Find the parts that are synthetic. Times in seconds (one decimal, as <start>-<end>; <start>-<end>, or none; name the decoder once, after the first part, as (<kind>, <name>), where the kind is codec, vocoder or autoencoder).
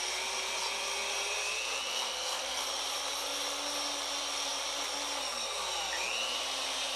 1.9-2.6 (codec, SNAC)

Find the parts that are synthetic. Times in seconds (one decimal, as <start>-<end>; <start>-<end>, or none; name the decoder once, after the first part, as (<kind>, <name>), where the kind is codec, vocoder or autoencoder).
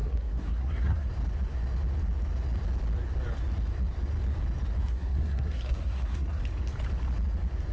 0.0-1.1 (codec, SNAC); 4.8-6.4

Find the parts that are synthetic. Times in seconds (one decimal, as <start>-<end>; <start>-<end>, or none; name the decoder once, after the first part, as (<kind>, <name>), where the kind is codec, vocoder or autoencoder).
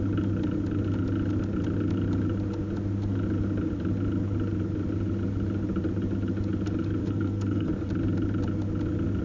7.0-7.7 (codec, SNAC)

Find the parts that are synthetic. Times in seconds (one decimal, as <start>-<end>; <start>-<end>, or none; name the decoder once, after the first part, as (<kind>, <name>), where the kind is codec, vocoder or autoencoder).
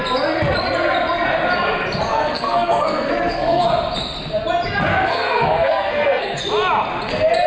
2.1-3.7 (codec, SNAC); 4.9-6.4